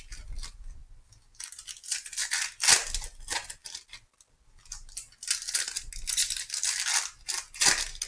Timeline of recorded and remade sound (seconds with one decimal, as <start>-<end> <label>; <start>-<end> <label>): 0.0-8.1 recorded